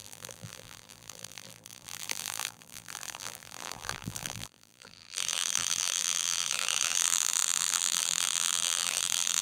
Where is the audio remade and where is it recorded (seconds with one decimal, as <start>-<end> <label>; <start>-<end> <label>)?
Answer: 0.0-9.4 remade